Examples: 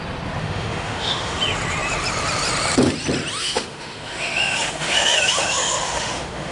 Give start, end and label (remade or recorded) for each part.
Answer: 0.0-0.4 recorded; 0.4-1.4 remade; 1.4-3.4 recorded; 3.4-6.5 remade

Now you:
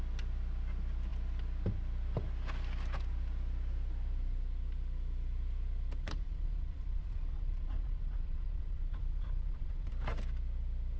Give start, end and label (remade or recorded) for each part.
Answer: 0.0-6.0 recorded; 6.0-9.9 remade; 9.9-11.0 recorded